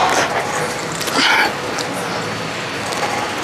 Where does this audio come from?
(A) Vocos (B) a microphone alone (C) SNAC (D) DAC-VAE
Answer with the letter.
B